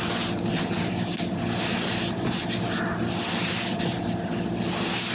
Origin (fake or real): real